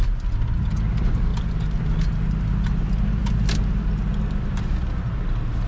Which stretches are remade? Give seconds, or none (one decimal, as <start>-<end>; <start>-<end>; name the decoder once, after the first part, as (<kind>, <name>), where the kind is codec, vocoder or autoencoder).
none

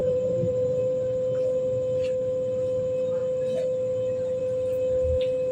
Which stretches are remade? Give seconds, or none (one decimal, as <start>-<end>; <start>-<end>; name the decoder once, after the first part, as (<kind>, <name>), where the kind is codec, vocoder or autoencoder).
0.0-0.8 (vocoder, BigVGAN v2)

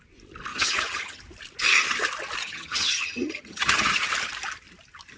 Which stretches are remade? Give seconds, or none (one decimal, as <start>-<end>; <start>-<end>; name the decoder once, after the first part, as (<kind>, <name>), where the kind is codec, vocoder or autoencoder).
0.5-1.2 (vocoder, HiFi-GAN); 2.4-4.1

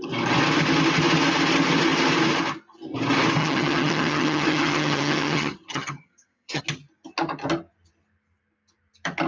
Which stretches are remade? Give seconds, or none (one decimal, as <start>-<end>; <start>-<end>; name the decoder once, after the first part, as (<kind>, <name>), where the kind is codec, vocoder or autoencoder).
3.4-6.6 (vocoder, HiFi-GAN)

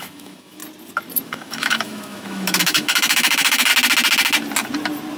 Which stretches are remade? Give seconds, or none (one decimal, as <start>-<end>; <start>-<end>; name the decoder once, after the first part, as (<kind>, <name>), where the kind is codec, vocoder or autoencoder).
0.0-0.6 (autoencoder, DAC-VAE); 1.2-3.7